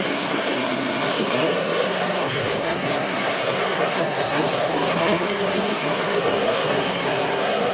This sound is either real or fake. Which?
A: fake